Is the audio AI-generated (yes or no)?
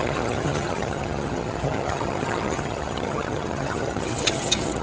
yes